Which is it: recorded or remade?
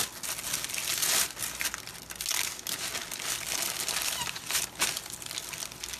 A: recorded